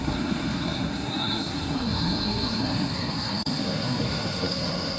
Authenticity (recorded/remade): remade